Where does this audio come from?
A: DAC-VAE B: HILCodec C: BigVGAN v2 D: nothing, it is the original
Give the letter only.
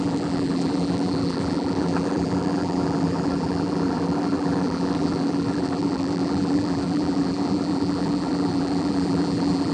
C